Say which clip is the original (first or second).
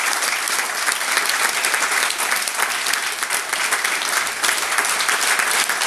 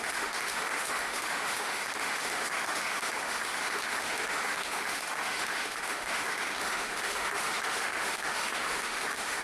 first